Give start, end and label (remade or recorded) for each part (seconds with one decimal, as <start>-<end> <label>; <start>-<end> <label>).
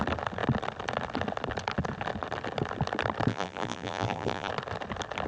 0.0-3.3 recorded; 3.3-4.5 remade; 4.5-5.3 recorded